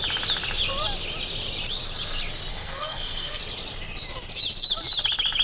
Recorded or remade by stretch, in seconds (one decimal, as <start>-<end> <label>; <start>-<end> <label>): 0.0-2.5 recorded; 2.5-3.4 remade; 3.4-5.4 recorded